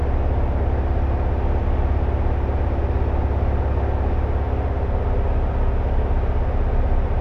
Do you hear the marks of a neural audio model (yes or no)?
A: no